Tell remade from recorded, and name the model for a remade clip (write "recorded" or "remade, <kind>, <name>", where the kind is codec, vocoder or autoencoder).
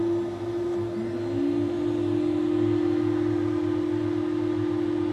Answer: recorded